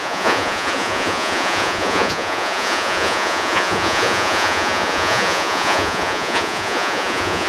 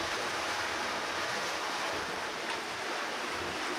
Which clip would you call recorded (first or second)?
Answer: second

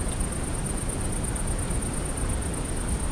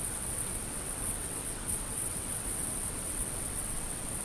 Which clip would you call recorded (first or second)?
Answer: first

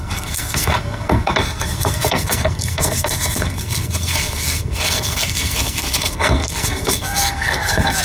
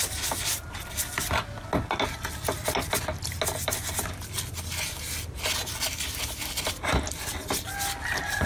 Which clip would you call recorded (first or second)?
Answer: second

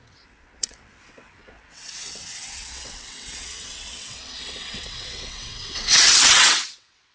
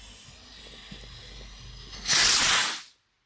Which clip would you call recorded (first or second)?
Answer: second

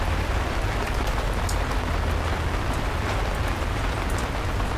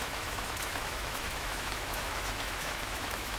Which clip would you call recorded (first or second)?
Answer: first